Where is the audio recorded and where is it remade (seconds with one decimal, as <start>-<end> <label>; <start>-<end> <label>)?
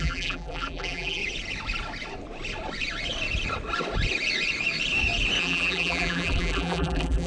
0.0-1.2 remade; 1.2-5.4 recorded; 5.4-7.3 remade